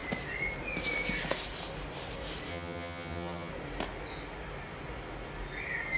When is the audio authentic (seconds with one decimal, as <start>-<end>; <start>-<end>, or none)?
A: 0.0-2.5; 3.5-6.0